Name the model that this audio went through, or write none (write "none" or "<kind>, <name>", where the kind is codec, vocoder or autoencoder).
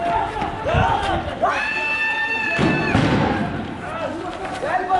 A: none